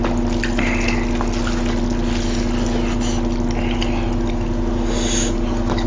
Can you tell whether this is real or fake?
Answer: real